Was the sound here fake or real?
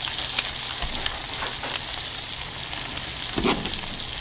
real